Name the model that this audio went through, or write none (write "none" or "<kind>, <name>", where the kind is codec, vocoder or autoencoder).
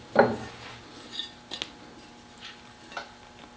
none